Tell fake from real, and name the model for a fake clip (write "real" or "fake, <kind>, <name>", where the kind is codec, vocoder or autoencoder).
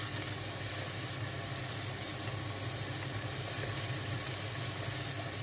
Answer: real